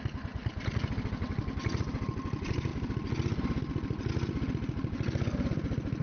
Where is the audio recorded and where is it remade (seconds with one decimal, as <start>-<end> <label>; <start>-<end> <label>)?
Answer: 0.0-6.0 recorded